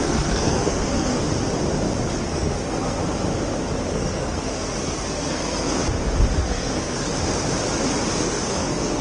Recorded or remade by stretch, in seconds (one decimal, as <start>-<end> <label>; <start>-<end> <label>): 0.0-1.2 remade; 1.2-2.2 recorded; 2.2-3.0 remade; 3.0-3.9 recorded; 3.9-5.8 remade; 5.8-6.4 recorded; 6.4-7.1 remade; 7.1-8.2 recorded; 8.2-9.0 remade